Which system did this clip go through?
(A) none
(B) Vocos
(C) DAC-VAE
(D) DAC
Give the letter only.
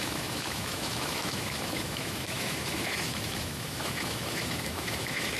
C